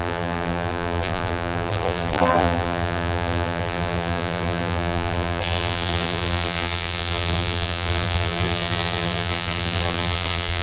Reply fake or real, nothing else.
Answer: fake